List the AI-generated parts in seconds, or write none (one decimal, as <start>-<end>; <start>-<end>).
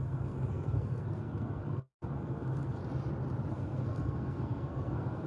0.0-2.8; 3.5-5.3